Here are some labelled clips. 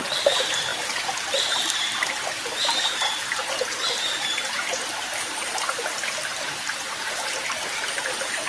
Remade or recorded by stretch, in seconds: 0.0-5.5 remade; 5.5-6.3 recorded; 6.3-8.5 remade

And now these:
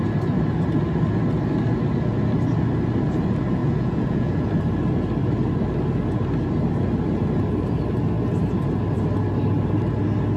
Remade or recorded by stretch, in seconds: 0.0-3.6 recorded; 3.6-4.5 remade; 4.5-10.4 recorded

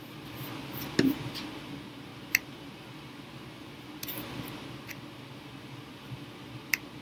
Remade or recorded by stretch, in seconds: 0.0-7.0 recorded

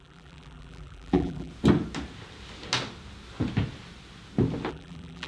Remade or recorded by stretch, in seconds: 0.0-1.5 remade; 1.5-4.7 recorded; 4.7-5.3 remade